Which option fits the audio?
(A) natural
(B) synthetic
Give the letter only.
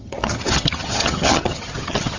B